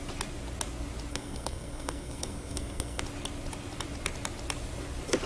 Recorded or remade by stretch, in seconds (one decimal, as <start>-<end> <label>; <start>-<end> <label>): 0.0-1.1 recorded; 1.1-3.0 remade; 3.0-5.3 recorded